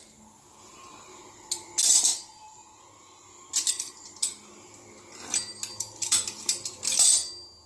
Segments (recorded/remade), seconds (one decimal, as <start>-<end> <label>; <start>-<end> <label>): 0.0-7.7 recorded